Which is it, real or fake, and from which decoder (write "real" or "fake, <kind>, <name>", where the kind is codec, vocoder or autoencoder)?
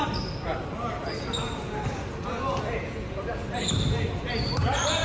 real